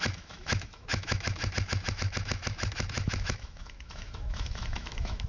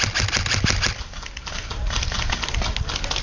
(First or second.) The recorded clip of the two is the second